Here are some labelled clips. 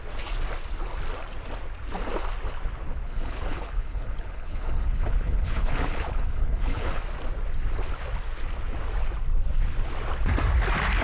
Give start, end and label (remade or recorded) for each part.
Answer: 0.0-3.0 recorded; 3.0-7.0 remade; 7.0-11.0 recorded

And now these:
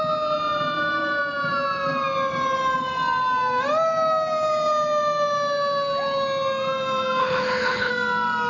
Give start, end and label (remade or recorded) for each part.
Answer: 0.0-7.2 recorded; 7.2-7.9 remade; 7.9-8.5 recorded

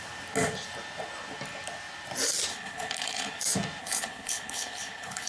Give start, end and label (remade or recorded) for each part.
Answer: 0.0-2.5 recorded; 2.5-3.4 remade; 3.4-3.8 recorded; 3.8-5.3 remade

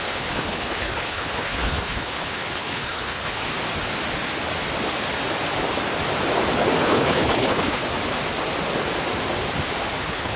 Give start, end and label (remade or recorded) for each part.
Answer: 0.0-3.4 remade; 3.4-6.8 recorded; 6.8-7.8 remade; 7.8-10.0 recorded; 10.0-10.4 remade

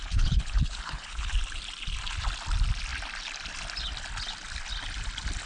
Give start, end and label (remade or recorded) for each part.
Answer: 0.0-1.3 remade; 1.3-5.5 recorded

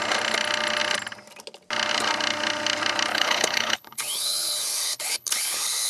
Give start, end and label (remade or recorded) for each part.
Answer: 0.0-3.1 recorded; 3.1-5.9 remade

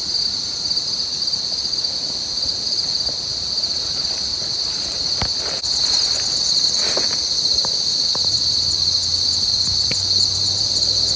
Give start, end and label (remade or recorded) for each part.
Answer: 0.0-11.2 recorded